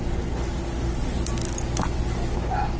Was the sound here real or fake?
real